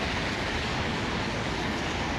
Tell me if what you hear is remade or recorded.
remade